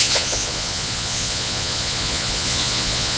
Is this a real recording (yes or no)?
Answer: no